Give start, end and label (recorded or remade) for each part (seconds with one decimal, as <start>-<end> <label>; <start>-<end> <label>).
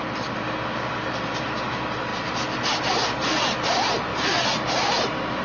0.0-5.4 recorded